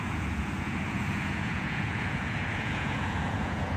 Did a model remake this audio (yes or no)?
yes